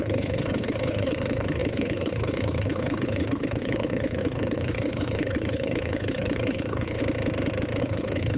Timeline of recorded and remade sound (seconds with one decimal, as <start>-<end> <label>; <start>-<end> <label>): 0.0-7.0 remade; 7.0-7.8 recorded; 7.8-8.4 remade